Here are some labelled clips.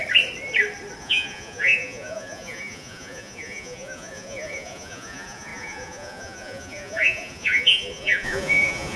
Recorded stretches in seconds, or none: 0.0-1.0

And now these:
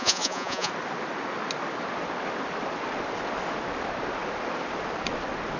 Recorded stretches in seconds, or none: 0.7-5.6

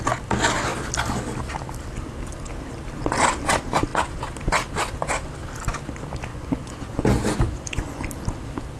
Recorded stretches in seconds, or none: 0.0-6.3; 8.0-8.8

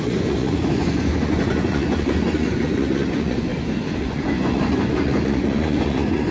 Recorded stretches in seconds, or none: 3.5-4.0

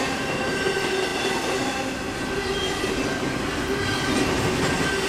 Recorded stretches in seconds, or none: 0.0-5.1

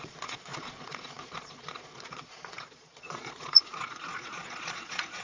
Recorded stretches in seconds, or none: none

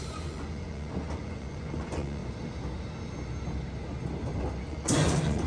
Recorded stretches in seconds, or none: 2.2-4.7